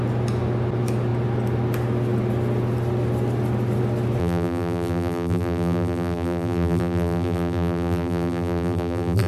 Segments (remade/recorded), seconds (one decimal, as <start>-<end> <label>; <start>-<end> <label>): 0.0-4.2 recorded; 4.2-9.3 remade